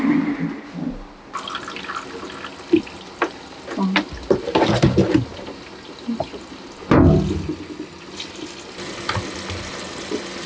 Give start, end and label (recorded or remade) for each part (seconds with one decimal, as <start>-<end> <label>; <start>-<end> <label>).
0.0-10.5 recorded